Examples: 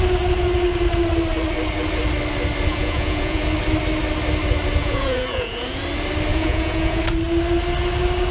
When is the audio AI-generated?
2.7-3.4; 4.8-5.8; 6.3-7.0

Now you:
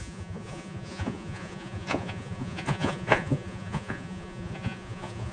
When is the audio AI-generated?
0.0-5.3

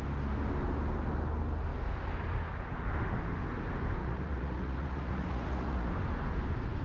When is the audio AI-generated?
4.0-5.9

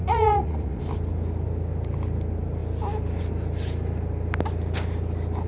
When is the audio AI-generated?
0.0-0.8